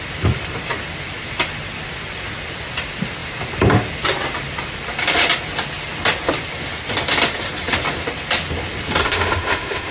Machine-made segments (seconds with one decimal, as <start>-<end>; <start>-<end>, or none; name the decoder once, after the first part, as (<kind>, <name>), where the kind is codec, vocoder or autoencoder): 9.0-9.9 (autoencoder, DAC-VAE)